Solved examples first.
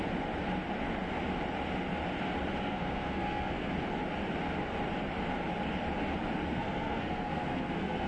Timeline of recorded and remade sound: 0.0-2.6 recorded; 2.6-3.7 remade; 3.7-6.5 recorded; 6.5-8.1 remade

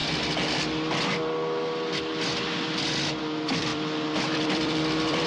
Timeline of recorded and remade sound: 0.0-3.2 recorded; 3.2-5.3 remade

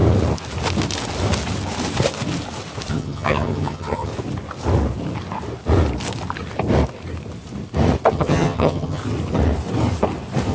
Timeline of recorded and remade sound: 0.0-2.9 recorded; 2.9-4.1 remade; 4.1-8.1 recorded; 8.1-9.0 remade; 9.0-10.5 recorded

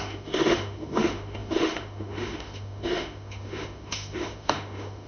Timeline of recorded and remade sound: 0.0-5.1 remade

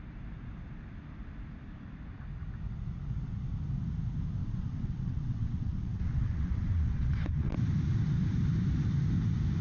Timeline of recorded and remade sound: 0.0-4.4 recorded; 4.4-7.5 remade; 7.5-9.6 recorded

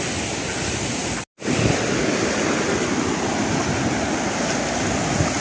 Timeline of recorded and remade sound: 0.0-5.4 recorded

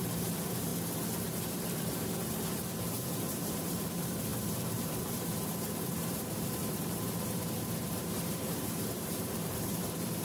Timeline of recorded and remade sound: 0.0-0.7 remade; 0.7-1.2 recorded; 1.2-10.2 remade